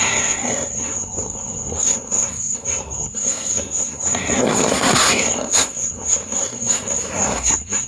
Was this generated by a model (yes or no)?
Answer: yes